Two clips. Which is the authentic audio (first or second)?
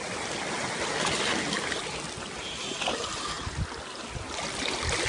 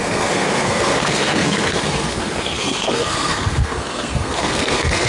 first